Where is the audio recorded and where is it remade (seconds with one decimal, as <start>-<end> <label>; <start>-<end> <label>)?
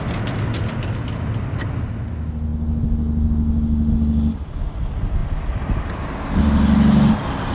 0.0-7.5 recorded